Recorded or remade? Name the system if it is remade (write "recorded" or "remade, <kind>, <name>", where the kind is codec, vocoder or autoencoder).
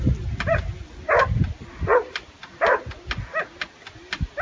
recorded